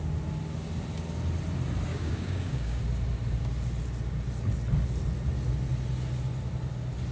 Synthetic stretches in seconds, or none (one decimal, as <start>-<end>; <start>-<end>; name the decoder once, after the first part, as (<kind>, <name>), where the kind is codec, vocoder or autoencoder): 1.9-2.8 (codec, DAC)